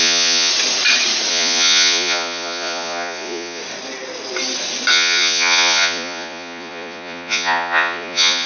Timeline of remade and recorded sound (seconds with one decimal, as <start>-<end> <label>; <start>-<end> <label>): 0.0-0.5 remade; 0.5-1.3 recorded; 1.3-3.6 remade; 3.6-4.9 recorded; 4.9-8.5 remade